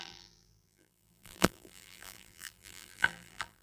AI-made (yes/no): yes